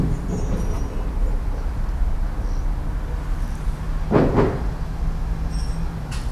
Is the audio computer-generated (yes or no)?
no